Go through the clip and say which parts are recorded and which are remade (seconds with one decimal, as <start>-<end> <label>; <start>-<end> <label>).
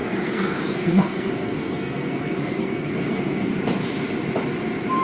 0.0-3.5 remade; 3.5-5.0 recorded